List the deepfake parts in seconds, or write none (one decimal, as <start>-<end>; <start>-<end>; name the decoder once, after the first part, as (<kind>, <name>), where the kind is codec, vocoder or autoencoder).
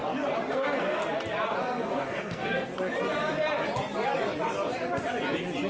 0.5-1.0 (codec, SNAC); 1.6-2.7